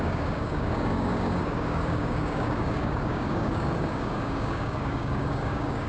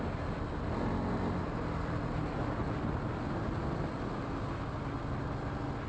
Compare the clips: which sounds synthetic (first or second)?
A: first